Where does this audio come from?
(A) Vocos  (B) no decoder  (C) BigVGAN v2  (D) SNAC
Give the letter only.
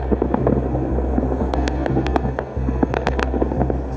D